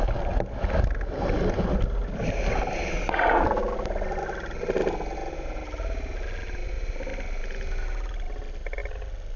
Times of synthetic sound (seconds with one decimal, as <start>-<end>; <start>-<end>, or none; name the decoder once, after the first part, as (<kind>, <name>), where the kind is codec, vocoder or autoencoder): none